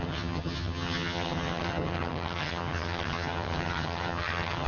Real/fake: fake